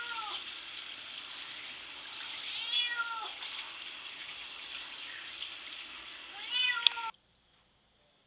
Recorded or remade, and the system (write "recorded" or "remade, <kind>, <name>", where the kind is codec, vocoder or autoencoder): recorded